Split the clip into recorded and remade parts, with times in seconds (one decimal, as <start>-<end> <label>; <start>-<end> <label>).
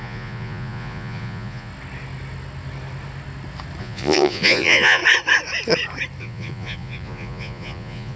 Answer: 0.0-1.7 remade; 1.7-3.8 recorded; 3.8-5.0 remade; 5.0-6.2 recorded; 6.2-8.2 remade